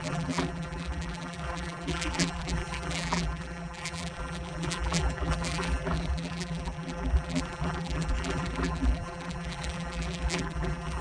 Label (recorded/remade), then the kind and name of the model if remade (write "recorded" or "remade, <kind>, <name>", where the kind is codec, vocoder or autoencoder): remade, vocoder, BigVGAN v2